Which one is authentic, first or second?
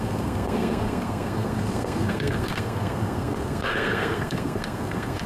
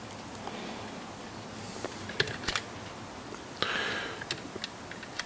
second